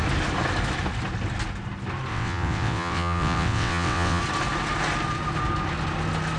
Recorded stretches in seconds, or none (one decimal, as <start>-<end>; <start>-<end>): 0.0-2.1; 4.2-6.4